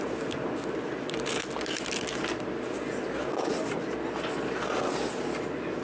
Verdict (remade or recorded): recorded